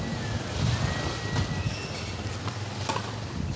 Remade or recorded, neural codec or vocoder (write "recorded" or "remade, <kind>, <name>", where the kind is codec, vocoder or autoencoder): recorded